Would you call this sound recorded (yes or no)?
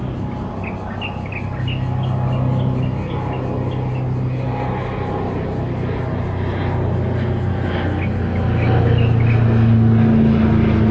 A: yes